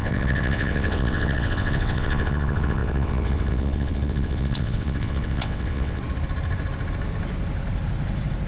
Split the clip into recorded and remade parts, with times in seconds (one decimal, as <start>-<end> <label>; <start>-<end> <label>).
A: 0.0-6.0 remade; 6.0-8.5 recorded